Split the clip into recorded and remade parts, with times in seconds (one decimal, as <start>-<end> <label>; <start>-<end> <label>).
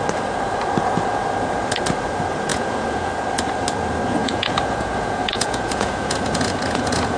0.0-2.5 recorded; 2.5-3.1 remade; 3.1-4.2 recorded; 4.2-7.2 remade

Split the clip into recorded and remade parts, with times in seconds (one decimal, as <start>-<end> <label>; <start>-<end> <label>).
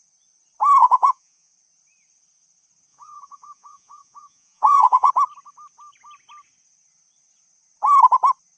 0.0-0.8 recorded; 0.8-1.5 remade; 1.5-2.9 recorded; 2.9-5.1 remade; 5.1-8.6 recorded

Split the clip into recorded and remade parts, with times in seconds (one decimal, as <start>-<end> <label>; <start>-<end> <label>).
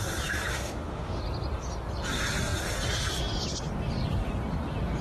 0.0-0.5 recorded; 0.5-1.2 remade; 1.2-5.0 recorded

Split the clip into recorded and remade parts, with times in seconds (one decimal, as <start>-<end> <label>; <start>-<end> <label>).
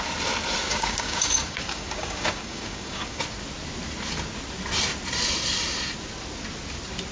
0.0-0.6 recorded; 0.6-3.2 remade; 3.2-7.1 recorded